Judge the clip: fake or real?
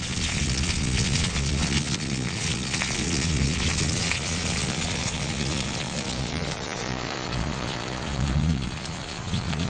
fake